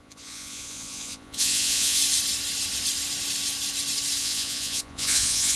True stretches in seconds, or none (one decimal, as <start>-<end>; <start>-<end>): 2.0-4.2